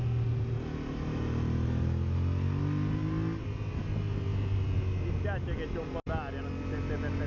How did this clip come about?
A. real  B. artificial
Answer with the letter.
A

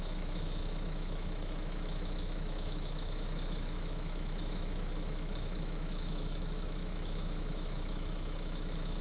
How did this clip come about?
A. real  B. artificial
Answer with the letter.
B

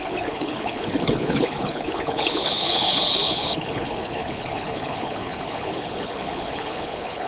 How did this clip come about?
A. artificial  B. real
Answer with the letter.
A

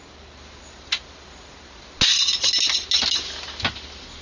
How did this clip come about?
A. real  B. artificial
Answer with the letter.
A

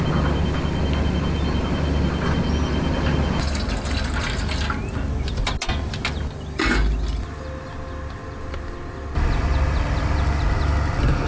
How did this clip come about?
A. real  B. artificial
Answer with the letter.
A